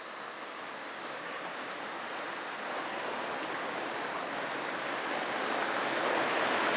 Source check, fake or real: real